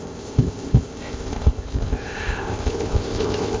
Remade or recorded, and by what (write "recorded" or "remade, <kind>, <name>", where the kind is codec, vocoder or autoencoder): remade, codec, ZipCodec